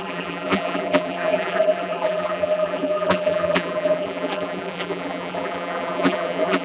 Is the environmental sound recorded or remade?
remade